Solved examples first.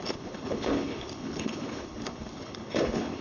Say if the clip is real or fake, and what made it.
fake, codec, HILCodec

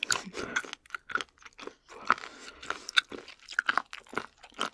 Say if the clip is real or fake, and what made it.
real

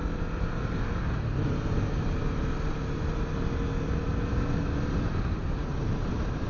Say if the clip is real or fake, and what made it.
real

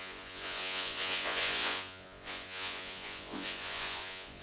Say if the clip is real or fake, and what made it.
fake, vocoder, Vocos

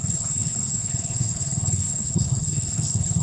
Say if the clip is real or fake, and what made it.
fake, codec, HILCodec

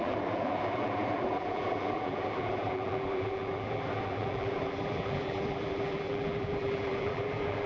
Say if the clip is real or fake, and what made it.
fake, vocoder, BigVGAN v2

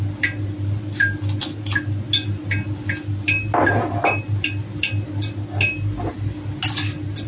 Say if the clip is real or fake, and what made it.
real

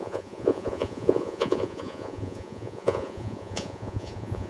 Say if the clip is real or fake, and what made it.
fake, vocoder, Vocos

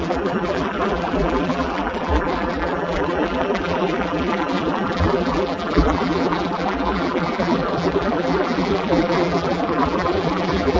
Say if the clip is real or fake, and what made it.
fake, vocoder, BigVGAN v2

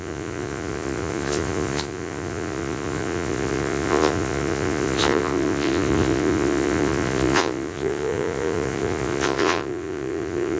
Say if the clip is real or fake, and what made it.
fake, vocoder, Vocos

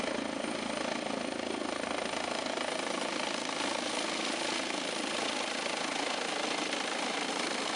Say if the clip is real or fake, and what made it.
real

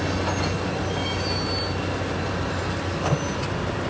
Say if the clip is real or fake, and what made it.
real